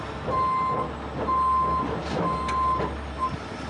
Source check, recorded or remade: recorded